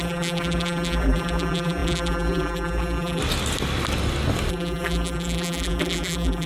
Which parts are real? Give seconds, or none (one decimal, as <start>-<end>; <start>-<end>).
3.2-4.5